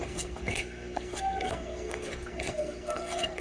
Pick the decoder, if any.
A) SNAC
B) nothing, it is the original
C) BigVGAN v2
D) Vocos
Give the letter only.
A